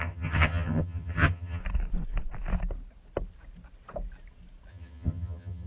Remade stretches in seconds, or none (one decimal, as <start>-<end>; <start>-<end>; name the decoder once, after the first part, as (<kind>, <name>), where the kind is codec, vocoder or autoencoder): 0.0-1.6 (vocoder, HiFi-GAN); 4.7-5.7

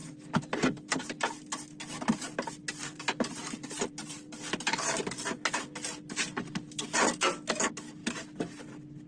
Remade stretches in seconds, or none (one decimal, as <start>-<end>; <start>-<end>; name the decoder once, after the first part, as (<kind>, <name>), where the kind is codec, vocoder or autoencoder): 2.8-4.3 (vocoder, BigVGAN v2); 8.0-8.6

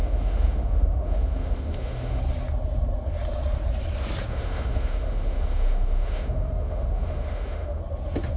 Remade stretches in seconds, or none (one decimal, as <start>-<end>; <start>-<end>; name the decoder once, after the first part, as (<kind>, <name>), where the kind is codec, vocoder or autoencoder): 0.0-2.2 (autoencoder, DAC-VAE); 4.3-7.8

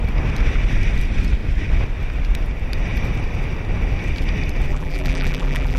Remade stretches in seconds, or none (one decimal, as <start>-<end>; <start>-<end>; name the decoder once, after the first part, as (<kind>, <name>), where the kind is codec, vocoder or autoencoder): 4.7-5.8 (vocoder, BigVGAN v2)

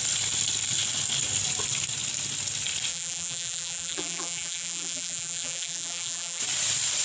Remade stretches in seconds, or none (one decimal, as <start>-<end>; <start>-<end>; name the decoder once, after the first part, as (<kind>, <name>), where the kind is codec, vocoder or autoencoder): 2.9-6.4 (vocoder, BigVGAN v2)